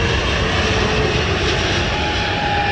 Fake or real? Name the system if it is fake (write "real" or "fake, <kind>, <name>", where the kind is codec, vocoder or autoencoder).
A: real